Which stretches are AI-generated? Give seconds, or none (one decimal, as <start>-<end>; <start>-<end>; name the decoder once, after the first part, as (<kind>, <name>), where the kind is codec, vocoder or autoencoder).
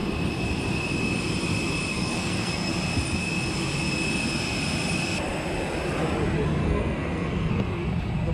1.9-2.7 (codec, SNAC); 6.6-7.5